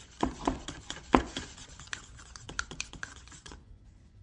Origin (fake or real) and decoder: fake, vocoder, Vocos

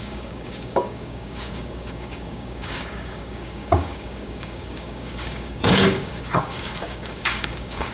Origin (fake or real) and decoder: fake, codec, DAC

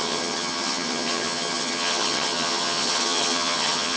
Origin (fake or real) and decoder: fake, vocoder, HiFi-GAN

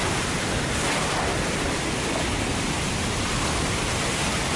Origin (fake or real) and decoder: real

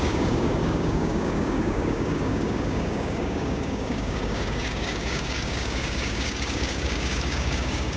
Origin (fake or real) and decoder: fake, codec, DAC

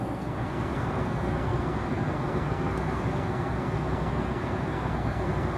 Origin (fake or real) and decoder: fake, codec, SNAC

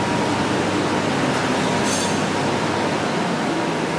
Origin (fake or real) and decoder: real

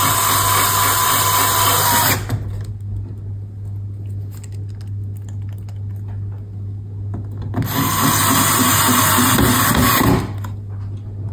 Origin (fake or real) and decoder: real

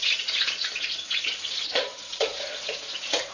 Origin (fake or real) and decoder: fake, vocoder, Vocos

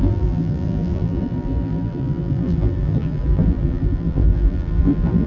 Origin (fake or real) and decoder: fake, vocoder, BigVGAN v2